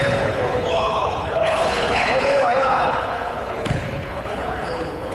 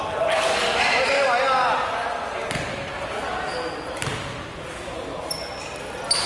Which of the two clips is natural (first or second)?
second